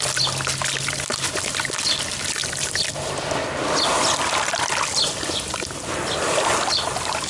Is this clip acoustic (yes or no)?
yes